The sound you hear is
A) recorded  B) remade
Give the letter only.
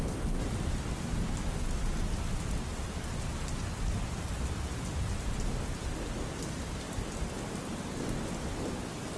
A